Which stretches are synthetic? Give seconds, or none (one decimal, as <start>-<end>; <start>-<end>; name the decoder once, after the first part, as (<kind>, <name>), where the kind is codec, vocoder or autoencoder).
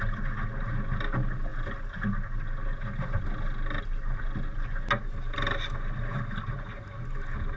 none